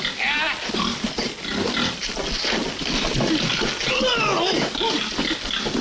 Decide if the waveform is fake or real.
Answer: real